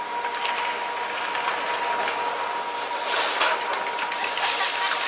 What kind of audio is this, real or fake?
real